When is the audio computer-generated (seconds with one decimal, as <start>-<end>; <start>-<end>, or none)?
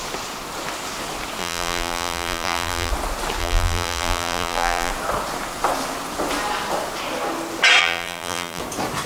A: 1.4-2.9; 3.4-4.9; 7.8-8.6